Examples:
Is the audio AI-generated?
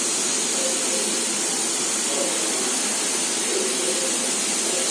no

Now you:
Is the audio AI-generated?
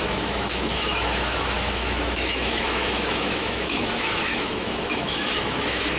yes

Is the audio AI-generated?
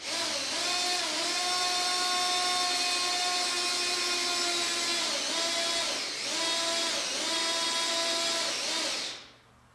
no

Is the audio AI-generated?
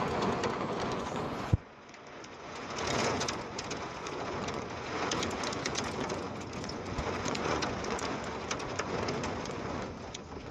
yes